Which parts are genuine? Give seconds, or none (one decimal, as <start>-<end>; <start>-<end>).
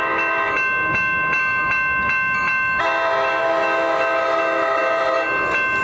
0.0-5.8